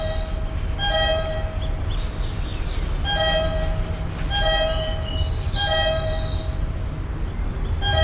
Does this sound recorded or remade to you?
recorded